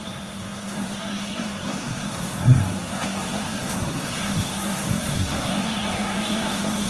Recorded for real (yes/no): no